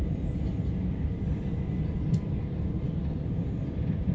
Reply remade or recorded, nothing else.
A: recorded